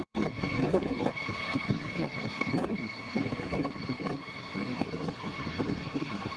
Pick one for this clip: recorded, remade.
remade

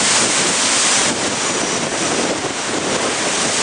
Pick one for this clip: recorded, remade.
recorded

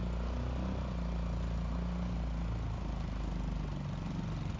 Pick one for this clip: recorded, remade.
recorded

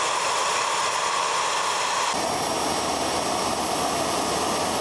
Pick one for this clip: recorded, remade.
recorded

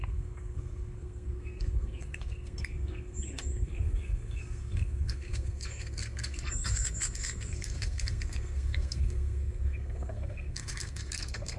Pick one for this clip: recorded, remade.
remade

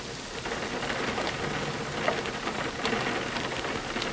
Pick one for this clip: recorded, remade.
recorded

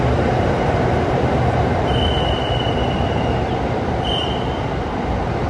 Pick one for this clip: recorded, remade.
remade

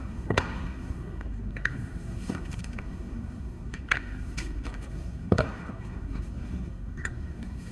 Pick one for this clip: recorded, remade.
remade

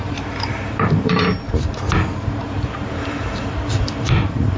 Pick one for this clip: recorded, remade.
remade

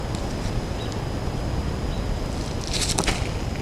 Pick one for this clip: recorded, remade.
recorded